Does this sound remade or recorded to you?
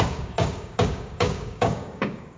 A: remade